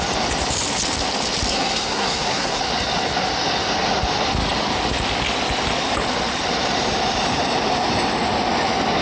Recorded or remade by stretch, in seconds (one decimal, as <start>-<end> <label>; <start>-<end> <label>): 0.0-1.5 recorded; 1.5-2.6 remade; 2.6-9.0 recorded